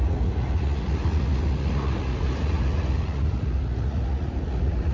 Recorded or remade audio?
remade